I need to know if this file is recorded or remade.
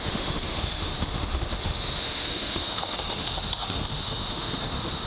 remade